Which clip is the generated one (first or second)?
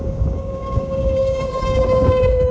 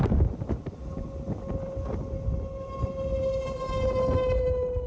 first